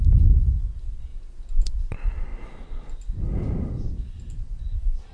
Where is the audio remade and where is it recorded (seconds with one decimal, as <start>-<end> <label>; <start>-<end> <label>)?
0.0-5.1 recorded